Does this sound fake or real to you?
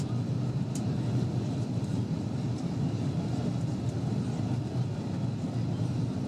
real